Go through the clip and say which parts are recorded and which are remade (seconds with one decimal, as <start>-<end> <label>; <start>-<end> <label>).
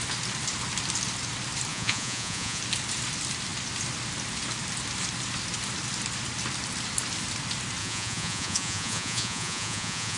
0.0-1.7 recorded; 1.7-2.6 remade; 2.6-7.8 recorded; 7.8-10.2 remade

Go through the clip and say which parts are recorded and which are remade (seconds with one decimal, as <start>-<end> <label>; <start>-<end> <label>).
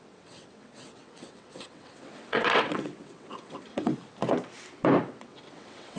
0.0-3.9 remade; 3.9-5.0 recorded; 5.0-6.0 remade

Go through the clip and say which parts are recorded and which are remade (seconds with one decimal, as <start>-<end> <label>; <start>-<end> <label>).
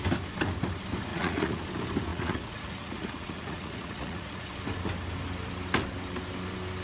0.0-1.1 recorded; 1.1-1.6 remade; 1.6-2.1 recorded; 2.1-4.5 remade; 4.5-6.8 recorded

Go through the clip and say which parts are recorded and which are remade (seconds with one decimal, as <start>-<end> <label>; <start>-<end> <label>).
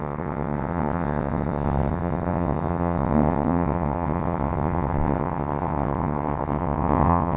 0.0-7.4 remade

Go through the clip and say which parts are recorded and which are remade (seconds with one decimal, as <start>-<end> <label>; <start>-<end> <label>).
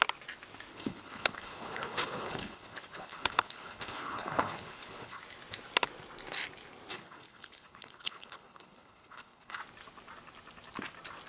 0.0-0.7 recorded; 0.7-5.2 remade; 5.2-6.9 recorded; 6.9-9.6 remade; 9.6-11.3 recorded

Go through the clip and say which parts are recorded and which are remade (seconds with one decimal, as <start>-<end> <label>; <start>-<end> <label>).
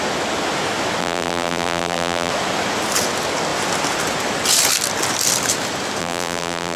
0.0-1.0 recorded; 1.0-2.3 remade; 2.3-6.0 recorded; 6.0-6.8 remade